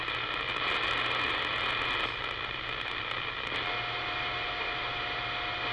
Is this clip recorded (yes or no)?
yes